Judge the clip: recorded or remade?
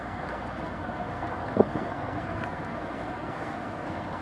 remade